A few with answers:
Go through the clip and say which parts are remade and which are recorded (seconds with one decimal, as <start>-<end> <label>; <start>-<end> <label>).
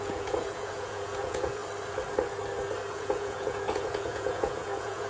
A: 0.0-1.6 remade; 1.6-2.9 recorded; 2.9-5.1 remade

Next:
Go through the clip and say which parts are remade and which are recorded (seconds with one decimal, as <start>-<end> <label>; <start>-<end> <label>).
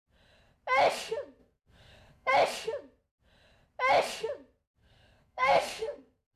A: 0.0-1.4 recorded; 1.4-2.3 remade; 2.3-4.8 recorded; 4.8-6.4 remade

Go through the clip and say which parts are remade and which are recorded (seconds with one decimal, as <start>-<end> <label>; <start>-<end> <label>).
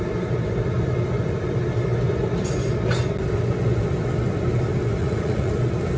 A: 0.0-5.0 recorded; 5.0-5.5 remade; 5.5-6.0 recorded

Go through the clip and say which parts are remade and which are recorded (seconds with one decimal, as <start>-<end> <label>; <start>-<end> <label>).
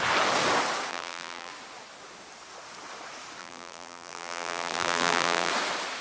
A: 0.0-0.9 recorded; 0.9-1.5 remade; 1.5-3.4 recorded; 3.4-5.5 remade; 5.5-6.0 recorded